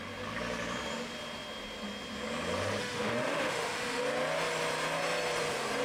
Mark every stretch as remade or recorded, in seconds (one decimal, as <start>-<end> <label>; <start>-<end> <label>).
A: 0.0-2.8 recorded; 2.8-4.0 remade; 4.0-5.8 recorded